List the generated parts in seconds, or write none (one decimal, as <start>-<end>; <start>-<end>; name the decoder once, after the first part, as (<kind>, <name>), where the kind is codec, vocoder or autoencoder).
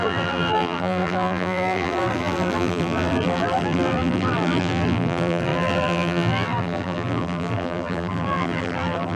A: 0.0-9.2 (vocoder, BigVGAN v2)